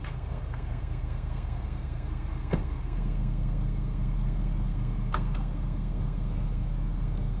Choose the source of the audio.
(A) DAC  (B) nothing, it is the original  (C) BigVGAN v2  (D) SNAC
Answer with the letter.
D